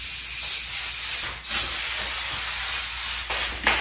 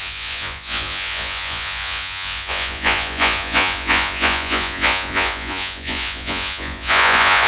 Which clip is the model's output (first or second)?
second